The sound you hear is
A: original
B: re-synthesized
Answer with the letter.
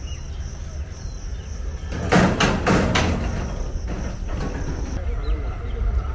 A